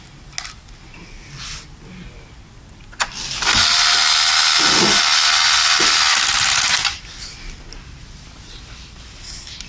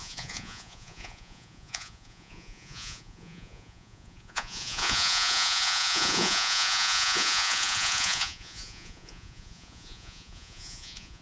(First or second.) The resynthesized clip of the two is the second